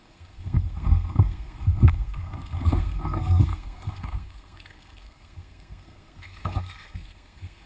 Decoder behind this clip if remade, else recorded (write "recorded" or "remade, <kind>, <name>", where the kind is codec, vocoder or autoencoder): remade, codec, SNAC